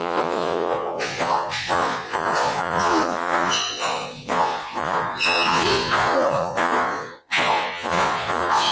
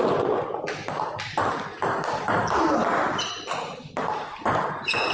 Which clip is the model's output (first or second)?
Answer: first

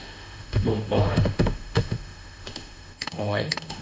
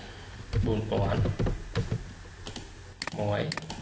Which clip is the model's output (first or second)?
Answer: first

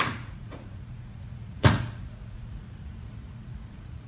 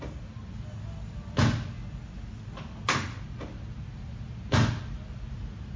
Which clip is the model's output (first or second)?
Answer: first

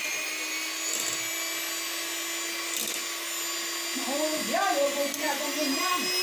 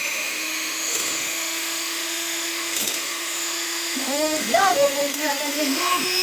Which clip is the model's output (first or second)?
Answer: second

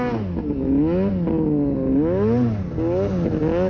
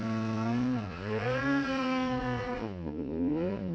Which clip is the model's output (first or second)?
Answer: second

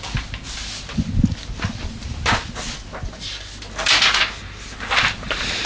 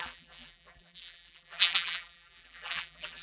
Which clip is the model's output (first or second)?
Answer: second